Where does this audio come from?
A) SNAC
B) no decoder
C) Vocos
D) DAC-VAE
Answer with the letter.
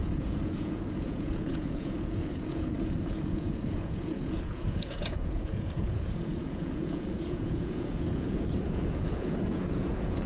C